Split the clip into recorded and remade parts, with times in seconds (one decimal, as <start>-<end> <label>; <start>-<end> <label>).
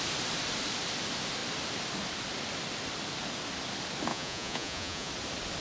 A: 0.0-4.1 recorded; 4.1-5.1 remade; 5.1-5.6 recorded